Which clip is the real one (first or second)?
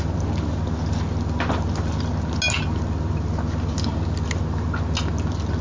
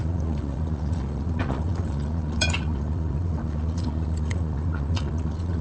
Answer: first